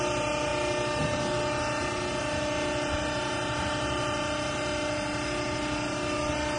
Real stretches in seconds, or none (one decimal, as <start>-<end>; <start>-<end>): 0.0-6.6